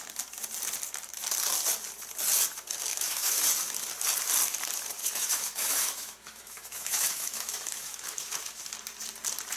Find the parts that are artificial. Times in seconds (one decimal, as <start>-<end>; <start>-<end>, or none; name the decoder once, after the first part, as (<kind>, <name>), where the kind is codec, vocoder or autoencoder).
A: 2.9-3.4 (autoencoder, DAC-VAE); 5.0-8.6